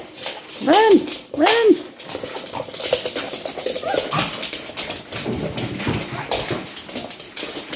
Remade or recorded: recorded